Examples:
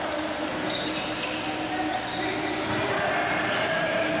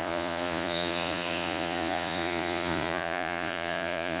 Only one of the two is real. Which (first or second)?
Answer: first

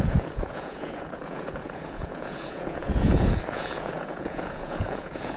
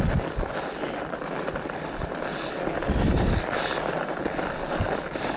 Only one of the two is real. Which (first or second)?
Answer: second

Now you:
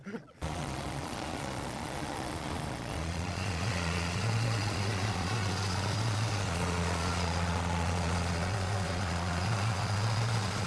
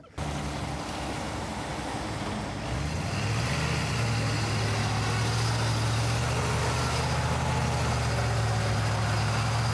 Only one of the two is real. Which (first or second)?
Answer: second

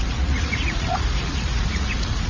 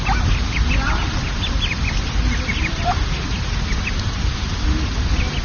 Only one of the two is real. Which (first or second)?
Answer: second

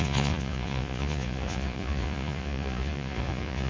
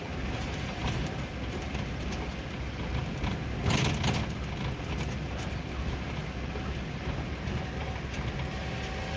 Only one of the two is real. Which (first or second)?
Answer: second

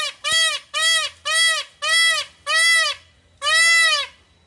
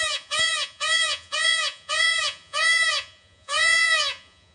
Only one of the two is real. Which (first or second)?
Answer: first